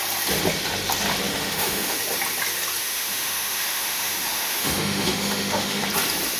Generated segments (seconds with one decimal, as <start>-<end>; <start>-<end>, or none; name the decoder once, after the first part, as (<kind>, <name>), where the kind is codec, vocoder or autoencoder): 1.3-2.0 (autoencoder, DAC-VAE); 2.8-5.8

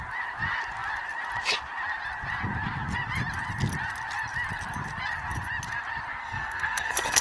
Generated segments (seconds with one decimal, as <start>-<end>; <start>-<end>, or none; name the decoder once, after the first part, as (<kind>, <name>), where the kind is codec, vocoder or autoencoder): 6.2-7.2 (codec, SNAC)

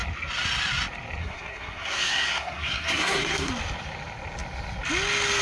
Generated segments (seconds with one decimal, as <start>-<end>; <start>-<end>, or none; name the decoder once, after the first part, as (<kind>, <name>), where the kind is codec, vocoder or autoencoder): 1.2-3.5 (codec, SNAC)

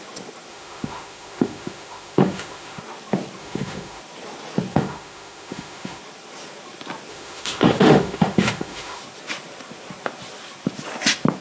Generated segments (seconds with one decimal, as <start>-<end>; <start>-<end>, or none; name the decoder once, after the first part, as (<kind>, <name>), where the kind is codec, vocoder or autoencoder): 0.5-2.8 (autoencoder, DAC-VAE); 3.4-4.0; 4.7-6.0; 7.1-9.0

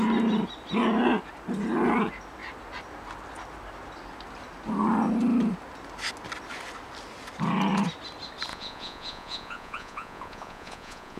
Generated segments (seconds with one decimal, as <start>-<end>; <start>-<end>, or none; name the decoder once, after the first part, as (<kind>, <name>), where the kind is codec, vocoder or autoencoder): 8.5-11.2 (vocoder, Vocos)